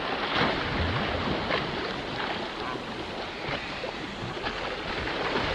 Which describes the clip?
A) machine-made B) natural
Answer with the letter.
B